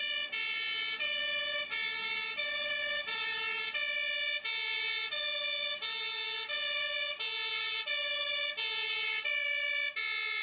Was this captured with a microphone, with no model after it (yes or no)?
yes